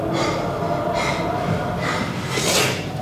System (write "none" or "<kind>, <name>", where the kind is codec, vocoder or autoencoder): none